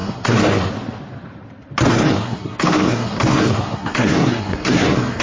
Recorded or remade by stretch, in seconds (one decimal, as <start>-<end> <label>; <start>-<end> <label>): 0.0-0.7 remade; 0.7-1.9 recorded; 1.9-5.2 remade